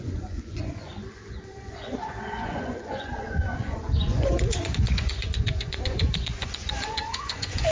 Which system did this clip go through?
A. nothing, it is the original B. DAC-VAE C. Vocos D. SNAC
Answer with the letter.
C